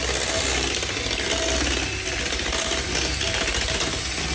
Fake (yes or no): no